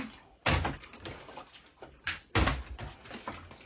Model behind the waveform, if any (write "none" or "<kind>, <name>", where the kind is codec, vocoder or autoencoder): none